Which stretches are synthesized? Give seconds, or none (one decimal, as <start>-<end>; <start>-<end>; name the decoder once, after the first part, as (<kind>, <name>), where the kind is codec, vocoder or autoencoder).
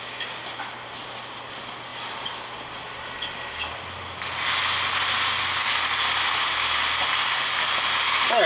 none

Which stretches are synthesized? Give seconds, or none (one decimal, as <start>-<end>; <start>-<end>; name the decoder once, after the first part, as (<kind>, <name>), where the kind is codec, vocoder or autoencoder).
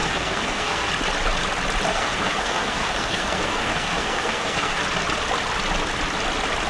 0.0-0.9 (codec, SNAC); 1.9-4.8